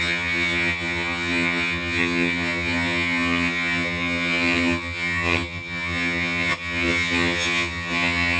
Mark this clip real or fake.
fake